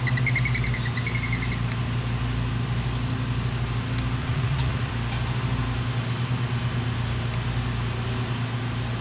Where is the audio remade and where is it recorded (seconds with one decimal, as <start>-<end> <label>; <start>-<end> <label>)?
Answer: 0.0-4.2 recorded; 4.2-4.9 remade; 4.9-9.0 recorded